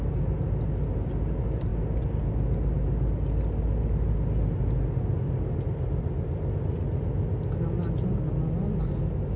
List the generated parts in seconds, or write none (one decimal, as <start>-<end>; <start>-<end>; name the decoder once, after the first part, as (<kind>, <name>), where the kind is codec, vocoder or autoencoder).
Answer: none